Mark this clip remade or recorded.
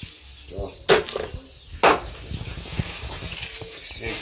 recorded